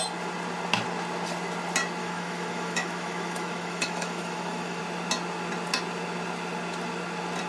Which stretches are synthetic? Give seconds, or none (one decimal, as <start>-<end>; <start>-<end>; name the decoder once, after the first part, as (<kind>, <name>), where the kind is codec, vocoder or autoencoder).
2.0-4.8 (autoencoder, DAC-VAE)